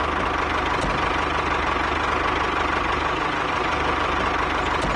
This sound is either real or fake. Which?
real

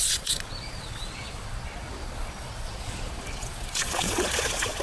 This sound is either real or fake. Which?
fake